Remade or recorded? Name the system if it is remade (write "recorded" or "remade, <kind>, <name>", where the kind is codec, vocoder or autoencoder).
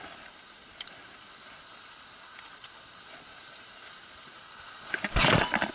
recorded